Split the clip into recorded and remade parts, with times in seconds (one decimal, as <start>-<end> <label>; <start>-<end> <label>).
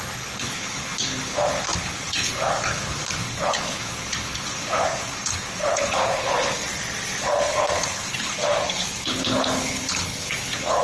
0.0-6.6 remade; 6.6-7.2 recorded; 7.2-10.8 remade